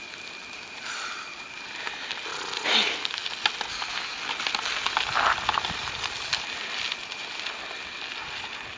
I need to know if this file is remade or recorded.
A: recorded